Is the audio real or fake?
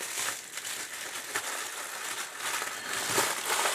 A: real